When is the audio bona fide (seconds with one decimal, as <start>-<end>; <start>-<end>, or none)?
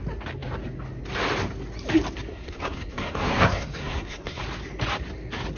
0.0-2.3; 4.4-5.6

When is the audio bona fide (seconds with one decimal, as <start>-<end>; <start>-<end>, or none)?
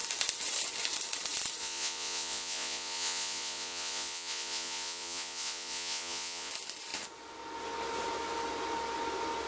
0.0-1.6; 6.5-9.5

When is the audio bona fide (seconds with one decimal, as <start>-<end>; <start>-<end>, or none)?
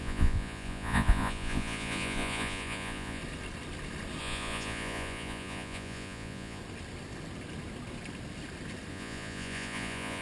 3.2-4.2; 6.6-8.9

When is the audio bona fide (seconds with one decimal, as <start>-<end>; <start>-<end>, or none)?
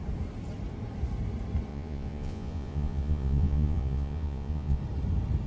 0.0-1.7; 4.8-5.5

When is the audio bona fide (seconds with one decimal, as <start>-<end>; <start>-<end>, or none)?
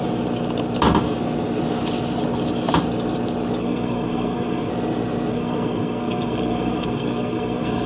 0.0-3.6; 4.7-5.3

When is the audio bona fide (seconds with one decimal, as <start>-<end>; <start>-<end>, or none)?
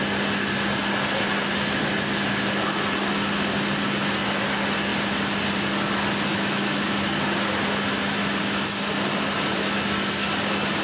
0.0-6.3; 6.8-10.8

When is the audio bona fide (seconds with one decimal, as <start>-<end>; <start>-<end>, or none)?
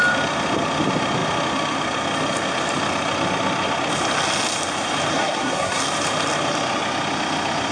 0.0-5.2; 5.8-7.7